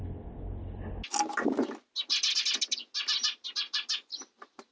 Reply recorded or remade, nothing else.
recorded